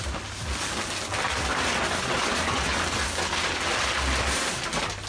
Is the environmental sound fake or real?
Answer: real